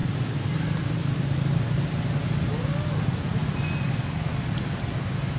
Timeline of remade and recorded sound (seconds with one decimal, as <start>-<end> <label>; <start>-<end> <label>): 0.0-5.4 recorded